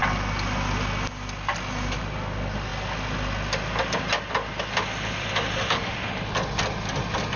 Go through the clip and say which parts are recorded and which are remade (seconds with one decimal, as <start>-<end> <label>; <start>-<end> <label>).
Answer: 0.0-7.4 recorded

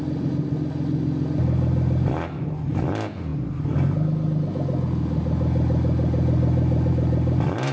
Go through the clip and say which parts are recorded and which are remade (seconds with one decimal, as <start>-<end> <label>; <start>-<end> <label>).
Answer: 0.0-7.7 recorded

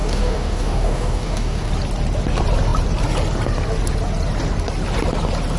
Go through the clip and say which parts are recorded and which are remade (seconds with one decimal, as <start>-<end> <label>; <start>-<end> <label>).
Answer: 0.0-1.7 remade; 1.7-5.6 recorded

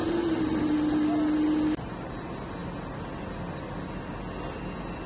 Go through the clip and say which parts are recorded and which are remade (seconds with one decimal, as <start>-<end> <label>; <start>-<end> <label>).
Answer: 0.0-5.1 recorded